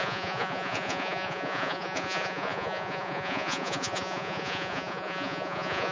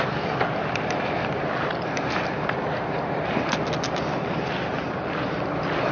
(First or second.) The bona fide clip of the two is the second